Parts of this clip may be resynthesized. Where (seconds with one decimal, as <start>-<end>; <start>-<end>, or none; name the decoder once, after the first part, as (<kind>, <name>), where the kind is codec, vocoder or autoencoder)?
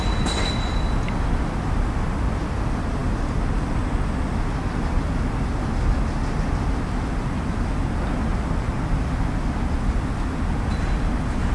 none